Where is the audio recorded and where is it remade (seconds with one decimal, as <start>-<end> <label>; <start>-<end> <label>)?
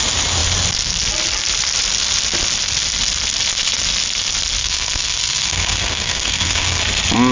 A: 0.0-4.6 recorded; 4.6-6.8 remade; 6.8-7.3 recorded